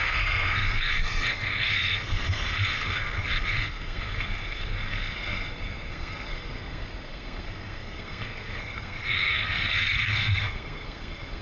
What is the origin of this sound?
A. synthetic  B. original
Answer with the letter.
A